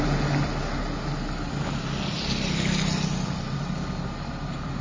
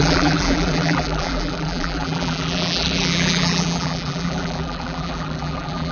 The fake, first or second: second